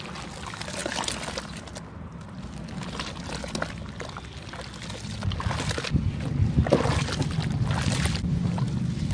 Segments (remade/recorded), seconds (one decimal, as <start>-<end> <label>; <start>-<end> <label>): 0.0-9.1 recorded